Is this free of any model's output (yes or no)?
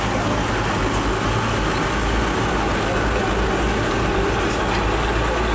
yes